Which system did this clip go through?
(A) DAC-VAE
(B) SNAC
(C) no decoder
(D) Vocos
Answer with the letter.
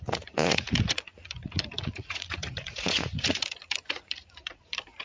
D